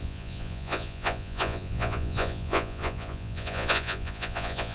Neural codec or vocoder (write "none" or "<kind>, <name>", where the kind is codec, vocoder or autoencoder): vocoder, Vocos